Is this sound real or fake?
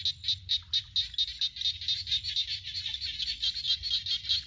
real